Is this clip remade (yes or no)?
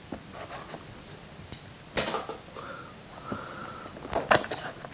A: yes